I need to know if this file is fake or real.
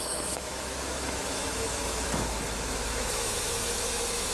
fake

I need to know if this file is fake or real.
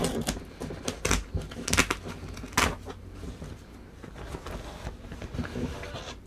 real